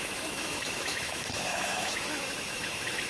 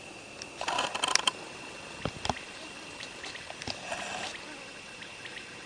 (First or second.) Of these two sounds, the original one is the second